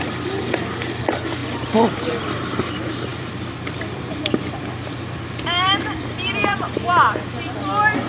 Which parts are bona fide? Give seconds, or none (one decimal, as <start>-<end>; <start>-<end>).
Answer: 0.0-3.1; 6.7-8.1